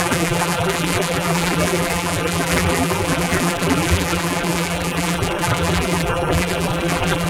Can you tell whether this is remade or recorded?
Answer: remade